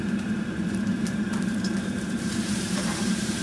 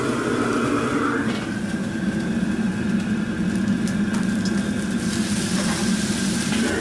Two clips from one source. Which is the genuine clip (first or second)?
second